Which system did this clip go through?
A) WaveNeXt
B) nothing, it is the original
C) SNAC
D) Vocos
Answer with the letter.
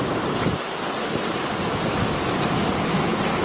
B